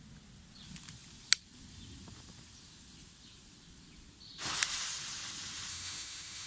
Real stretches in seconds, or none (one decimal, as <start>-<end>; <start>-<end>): 0.0-5.7